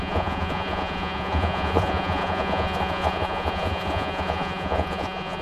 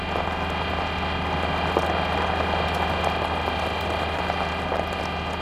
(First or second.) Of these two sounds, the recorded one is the second